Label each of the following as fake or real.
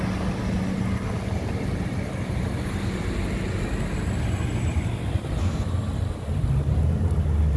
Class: real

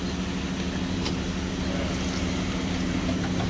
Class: real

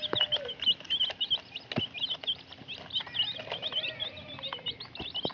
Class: real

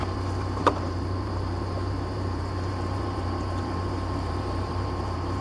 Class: fake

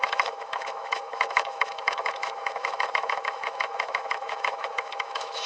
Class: fake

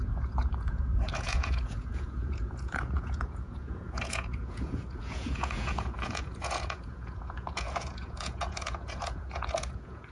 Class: fake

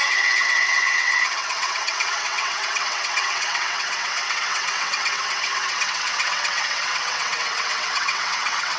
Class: fake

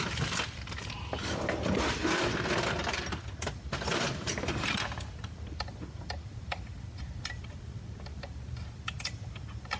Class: real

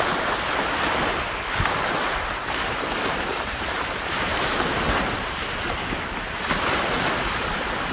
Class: real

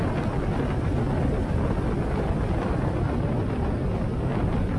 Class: real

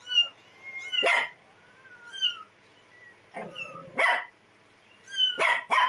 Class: real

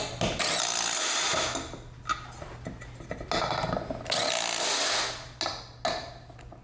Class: real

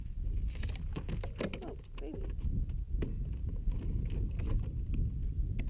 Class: real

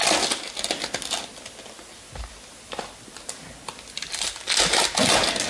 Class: real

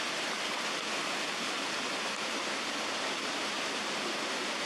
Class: real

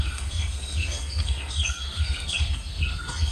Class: fake